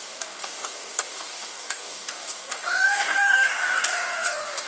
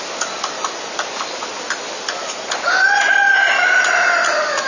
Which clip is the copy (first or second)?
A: first